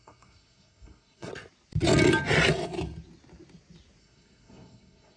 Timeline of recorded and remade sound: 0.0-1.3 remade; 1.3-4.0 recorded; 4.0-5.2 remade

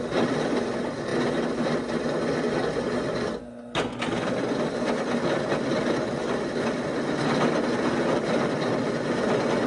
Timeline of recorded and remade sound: 0.0-9.7 recorded

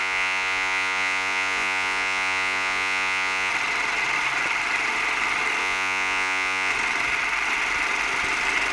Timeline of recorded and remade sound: 0.0-3.5 remade; 3.5-5.6 recorded; 5.6-6.7 remade; 6.7-8.7 recorded